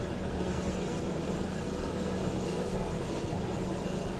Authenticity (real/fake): fake